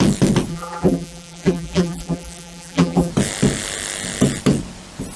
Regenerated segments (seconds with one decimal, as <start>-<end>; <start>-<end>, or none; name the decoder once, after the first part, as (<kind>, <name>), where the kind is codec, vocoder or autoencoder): 0.5-3.1 (vocoder, BigVGAN v2)